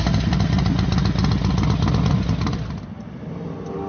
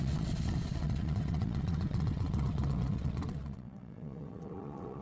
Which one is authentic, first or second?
first